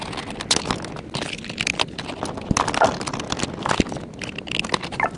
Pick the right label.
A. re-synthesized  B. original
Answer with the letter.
B